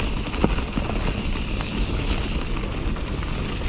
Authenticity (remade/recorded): recorded